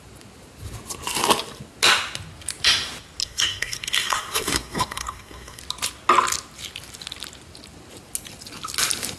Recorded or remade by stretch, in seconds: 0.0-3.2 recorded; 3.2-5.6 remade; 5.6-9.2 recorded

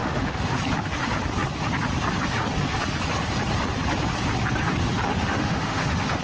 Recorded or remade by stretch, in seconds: 0.0-0.6 remade; 0.6-5.1 recorded; 5.1-6.2 remade